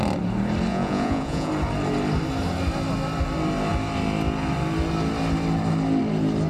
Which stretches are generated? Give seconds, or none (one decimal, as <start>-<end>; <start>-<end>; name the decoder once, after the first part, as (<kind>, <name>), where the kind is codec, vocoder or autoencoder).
0.7-1.5 (vocoder, Vocos)